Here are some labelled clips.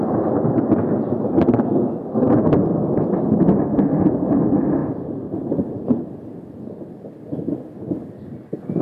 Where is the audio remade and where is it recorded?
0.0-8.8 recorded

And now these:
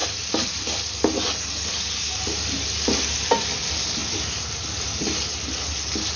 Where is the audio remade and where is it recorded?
0.0-0.6 remade; 0.6-4.0 recorded; 4.0-5.0 remade; 5.0-6.2 recorded

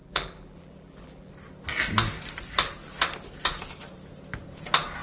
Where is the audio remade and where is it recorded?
0.0-1.3 remade; 1.3-5.0 recorded

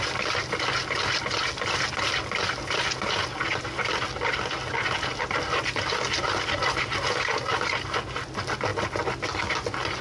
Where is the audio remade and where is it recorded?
0.0-10.0 recorded

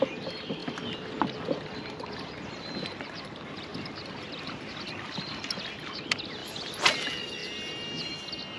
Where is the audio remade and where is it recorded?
0.0-0.6 recorded; 0.6-2.5 remade; 2.5-8.6 recorded

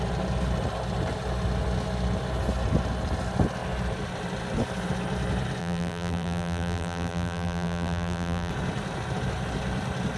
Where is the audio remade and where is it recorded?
0.0-5.6 recorded; 5.6-8.5 remade; 8.5-10.2 recorded

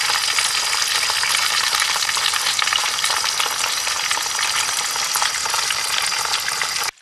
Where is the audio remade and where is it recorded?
0.0-1.4 recorded; 1.4-3.3 remade; 3.3-7.0 recorded